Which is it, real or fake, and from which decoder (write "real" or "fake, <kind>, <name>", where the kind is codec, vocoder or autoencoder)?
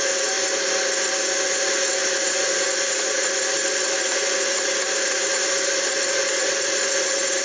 real